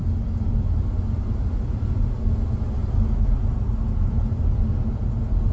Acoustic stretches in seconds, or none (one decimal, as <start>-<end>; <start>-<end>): 0.0-5.5